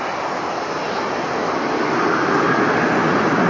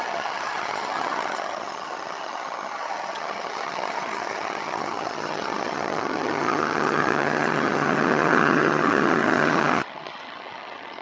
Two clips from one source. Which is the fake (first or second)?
second